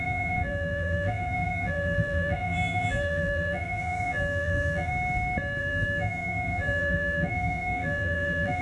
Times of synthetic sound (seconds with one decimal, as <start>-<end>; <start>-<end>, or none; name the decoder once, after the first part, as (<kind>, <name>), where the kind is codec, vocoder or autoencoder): 0.0-4.9 (vocoder, BigVGAN v2); 5.6-8.6